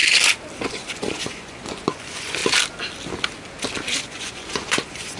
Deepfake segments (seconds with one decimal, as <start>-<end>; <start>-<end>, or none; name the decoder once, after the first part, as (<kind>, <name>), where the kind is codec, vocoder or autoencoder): 0.7-2.4 (vocoder, Vocos); 4.0-5.2

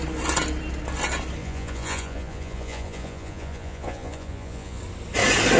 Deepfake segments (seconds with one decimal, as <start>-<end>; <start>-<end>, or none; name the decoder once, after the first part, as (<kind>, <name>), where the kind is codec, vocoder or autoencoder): 1.4-4.8 (vocoder, Vocos)

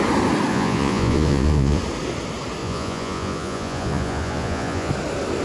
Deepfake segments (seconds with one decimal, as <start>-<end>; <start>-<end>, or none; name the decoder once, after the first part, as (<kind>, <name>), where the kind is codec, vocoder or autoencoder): 0.5-1.8 (vocoder, Vocos); 2.6-4.9

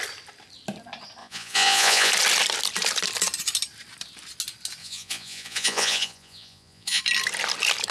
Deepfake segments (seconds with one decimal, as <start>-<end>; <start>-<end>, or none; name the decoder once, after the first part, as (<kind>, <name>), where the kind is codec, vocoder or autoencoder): 1.2-2.1 (vocoder, Vocos); 4.8-7.0

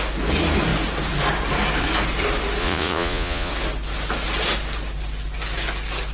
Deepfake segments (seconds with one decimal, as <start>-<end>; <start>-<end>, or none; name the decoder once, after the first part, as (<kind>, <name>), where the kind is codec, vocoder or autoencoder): 2.6-3.5 (vocoder, Vocos)

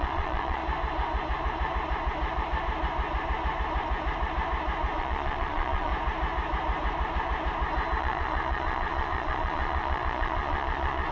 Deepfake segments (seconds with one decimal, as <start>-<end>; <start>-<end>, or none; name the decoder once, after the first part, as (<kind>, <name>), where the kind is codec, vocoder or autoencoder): 0.0-0.6 (vocoder, Vocos); 5.0-5.9; 8.0-11.1

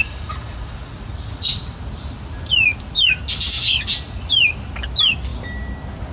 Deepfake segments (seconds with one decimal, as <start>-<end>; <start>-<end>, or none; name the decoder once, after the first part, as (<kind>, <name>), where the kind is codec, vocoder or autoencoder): 0.0-1.6 (vocoder, Vocos)

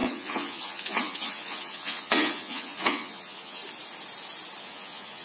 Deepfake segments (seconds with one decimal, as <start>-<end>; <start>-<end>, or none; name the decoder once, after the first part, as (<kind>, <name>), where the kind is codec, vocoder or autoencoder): 0.0-3.6 (vocoder, Vocos); 4.6-5.2